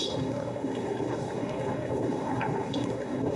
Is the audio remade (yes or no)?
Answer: yes